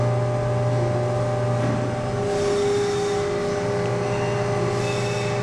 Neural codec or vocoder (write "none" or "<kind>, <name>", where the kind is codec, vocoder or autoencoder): none